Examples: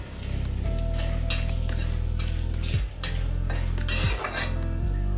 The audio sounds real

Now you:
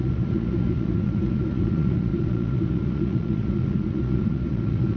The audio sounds fake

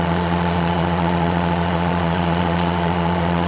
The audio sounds fake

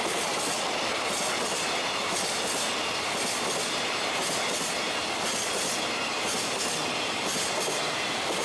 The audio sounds real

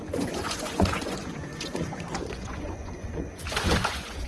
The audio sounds fake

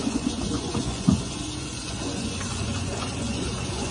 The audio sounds fake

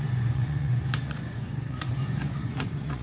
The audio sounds fake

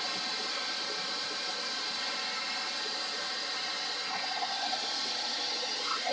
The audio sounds real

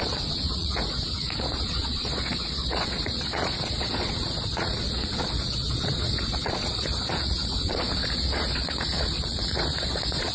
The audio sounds fake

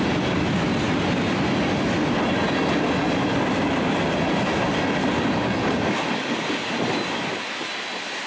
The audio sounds real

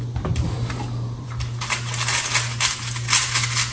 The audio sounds real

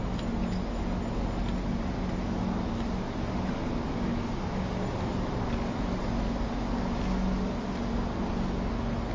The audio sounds real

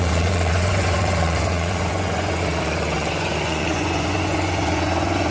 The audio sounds fake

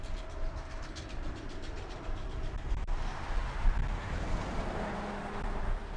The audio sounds real